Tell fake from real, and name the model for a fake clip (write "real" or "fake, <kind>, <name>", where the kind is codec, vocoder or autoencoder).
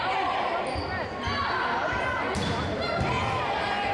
real